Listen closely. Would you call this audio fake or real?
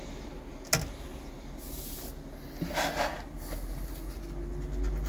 real